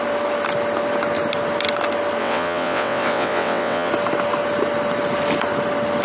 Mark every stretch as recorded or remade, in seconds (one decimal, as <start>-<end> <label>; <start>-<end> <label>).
0.0-2.2 recorded; 2.2-3.9 remade; 3.9-6.0 recorded